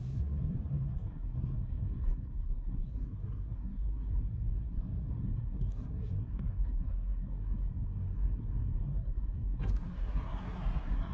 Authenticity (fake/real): fake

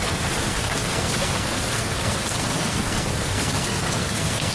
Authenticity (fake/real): fake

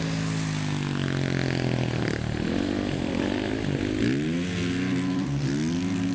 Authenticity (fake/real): real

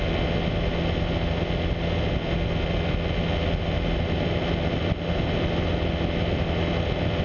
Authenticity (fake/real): real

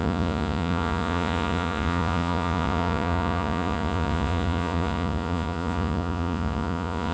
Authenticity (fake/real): fake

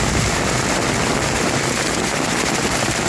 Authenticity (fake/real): real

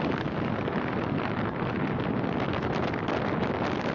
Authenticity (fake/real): real